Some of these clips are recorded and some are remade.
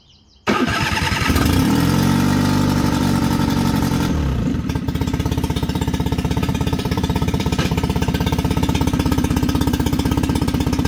remade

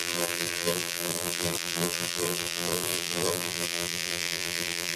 remade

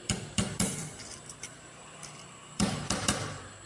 remade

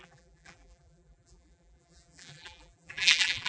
remade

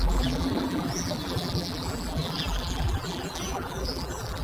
remade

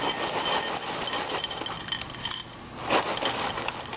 recorded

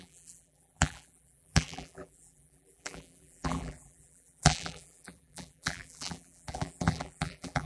remade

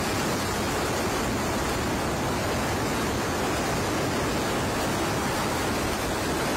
recorded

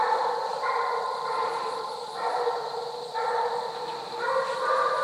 remade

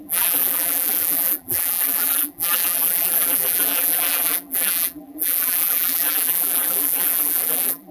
remade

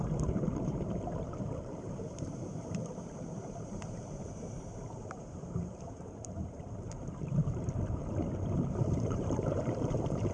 remade